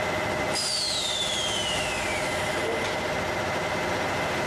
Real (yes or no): yes